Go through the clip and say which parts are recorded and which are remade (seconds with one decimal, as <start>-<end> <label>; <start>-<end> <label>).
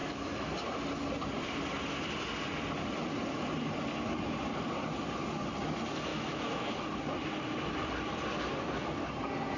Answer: 0.0-0.5 remade; 0.5-6.1 recorded; 6.1-6.7 remade; 6.7-9.6 recorded